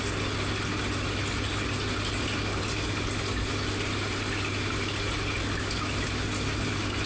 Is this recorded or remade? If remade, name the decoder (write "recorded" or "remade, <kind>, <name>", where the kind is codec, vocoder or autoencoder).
recorded